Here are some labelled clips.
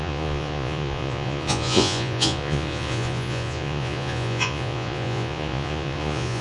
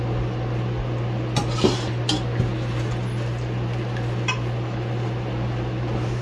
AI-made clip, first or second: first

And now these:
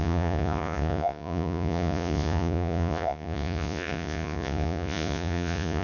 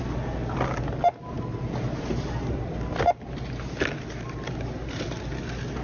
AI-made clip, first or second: first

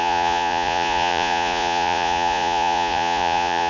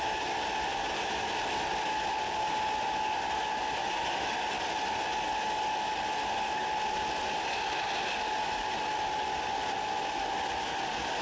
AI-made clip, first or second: first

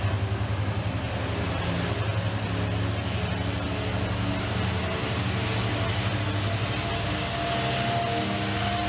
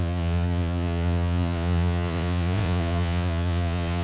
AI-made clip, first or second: second